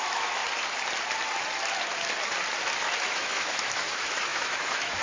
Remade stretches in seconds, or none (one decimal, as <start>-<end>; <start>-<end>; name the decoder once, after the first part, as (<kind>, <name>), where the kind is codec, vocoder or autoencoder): 0.0-0.4 (autoencoder, DAC-VAE); 2.8-5.0